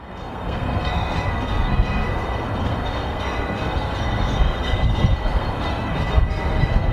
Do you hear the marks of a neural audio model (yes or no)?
yes